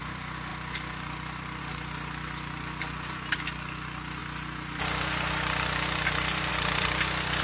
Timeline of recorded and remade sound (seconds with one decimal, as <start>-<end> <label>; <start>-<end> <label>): 0.0-7.4 recorded